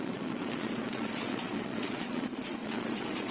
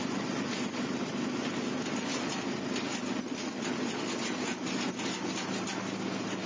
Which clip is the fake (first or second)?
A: first